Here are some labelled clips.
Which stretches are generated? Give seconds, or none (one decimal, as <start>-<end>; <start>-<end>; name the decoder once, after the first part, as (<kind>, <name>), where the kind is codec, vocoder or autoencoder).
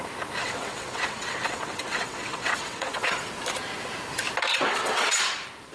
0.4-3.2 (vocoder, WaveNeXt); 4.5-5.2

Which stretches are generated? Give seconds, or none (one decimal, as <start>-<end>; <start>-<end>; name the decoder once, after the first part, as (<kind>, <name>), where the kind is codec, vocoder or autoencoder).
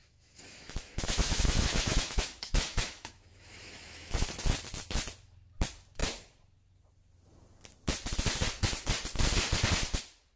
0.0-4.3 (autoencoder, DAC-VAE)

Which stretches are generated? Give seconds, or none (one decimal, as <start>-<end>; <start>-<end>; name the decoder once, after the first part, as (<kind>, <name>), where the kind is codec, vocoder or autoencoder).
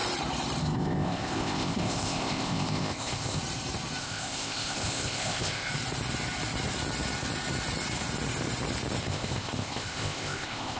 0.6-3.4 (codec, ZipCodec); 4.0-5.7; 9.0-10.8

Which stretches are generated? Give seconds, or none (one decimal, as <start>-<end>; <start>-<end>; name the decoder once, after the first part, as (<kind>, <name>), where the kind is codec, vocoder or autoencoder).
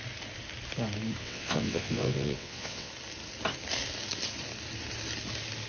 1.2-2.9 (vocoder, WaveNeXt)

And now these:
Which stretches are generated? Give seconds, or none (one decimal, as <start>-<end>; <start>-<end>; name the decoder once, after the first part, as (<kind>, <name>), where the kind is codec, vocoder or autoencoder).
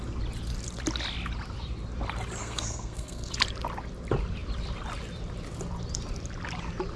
2.4-3.3 (codec, SNAC)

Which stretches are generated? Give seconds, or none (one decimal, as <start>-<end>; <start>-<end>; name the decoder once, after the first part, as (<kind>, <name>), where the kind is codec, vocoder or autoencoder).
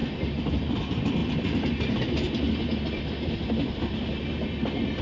0.0-2.7 (vocoder, BigVGAN v2); 3.6-5.0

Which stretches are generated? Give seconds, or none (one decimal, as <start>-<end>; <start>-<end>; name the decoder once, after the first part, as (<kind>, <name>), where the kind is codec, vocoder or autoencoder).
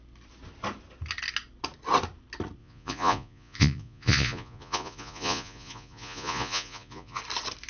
2.6-7.2 (vocoder, Vocos)